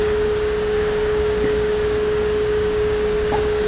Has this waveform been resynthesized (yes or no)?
yes